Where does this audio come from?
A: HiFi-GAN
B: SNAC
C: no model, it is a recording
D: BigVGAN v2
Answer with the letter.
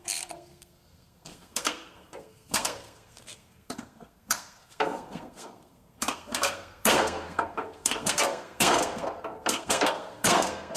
B